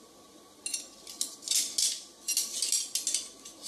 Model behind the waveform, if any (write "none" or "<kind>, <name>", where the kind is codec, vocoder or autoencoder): none